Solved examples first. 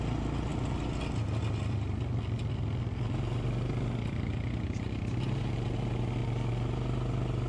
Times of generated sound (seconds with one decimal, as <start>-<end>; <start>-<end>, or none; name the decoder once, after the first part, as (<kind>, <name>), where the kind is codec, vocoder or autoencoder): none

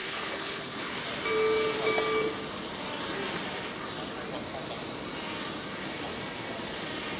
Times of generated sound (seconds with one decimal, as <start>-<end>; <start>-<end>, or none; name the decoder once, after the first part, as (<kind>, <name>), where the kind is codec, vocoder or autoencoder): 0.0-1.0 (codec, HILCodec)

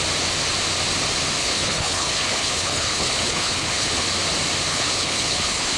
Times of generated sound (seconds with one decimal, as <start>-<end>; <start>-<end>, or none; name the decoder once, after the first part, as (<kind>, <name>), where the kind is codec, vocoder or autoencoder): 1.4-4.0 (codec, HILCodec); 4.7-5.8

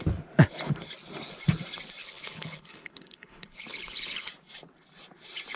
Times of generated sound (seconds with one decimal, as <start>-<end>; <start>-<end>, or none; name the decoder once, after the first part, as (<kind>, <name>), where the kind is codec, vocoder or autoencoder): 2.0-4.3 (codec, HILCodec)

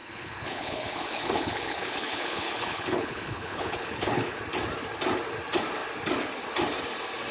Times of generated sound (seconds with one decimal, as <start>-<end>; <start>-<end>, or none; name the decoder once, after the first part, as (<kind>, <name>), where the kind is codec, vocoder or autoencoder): 0.0-4.4 (codec, HILCodec)

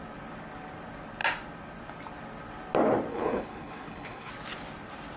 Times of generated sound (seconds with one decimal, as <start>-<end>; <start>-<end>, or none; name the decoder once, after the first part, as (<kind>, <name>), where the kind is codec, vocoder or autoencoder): 3.1-4.3 (codec, HILCodec)

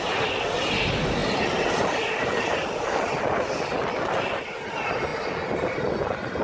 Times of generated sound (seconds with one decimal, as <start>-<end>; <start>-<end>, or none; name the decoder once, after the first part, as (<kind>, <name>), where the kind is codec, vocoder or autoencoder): none